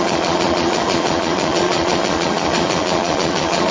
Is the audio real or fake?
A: fake